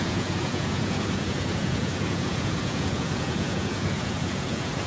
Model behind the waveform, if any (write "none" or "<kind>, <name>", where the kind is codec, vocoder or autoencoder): vocoder, Vocos